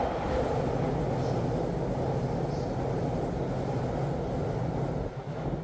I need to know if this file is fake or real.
real